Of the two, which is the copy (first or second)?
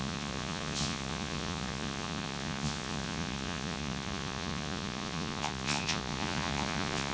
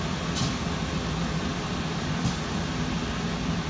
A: first